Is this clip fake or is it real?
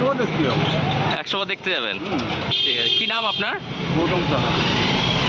fake